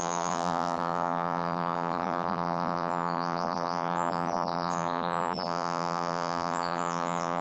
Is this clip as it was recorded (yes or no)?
no